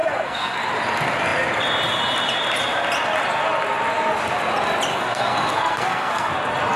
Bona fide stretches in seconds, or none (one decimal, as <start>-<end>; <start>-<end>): 0.7-4.9; 6.3-6.8